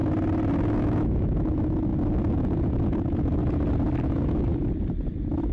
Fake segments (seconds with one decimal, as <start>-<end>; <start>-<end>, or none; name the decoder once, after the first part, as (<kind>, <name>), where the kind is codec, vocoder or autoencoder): 0.5-3.4 (autoencoder, DAC-VAE); 4.0-4.5